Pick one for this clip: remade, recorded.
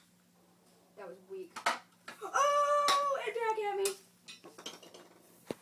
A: recorded